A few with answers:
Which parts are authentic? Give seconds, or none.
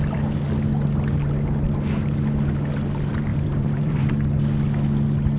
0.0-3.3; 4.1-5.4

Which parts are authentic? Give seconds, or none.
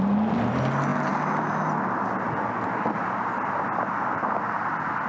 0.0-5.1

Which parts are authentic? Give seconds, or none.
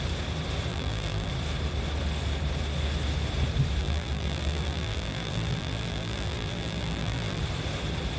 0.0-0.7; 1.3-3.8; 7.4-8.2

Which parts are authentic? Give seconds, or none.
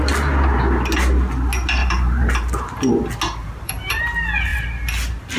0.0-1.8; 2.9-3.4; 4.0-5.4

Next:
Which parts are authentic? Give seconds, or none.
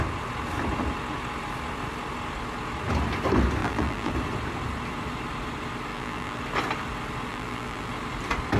0.0-3.6; 4.1-5.9; 6.4-7.3; 7.9-8.6